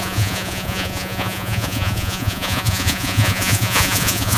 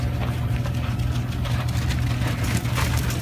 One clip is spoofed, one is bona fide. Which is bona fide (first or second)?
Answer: second